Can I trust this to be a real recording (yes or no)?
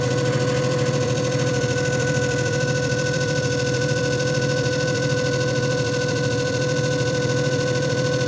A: no